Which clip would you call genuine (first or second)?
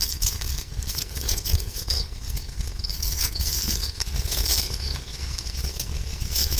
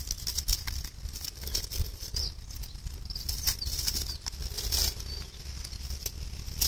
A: second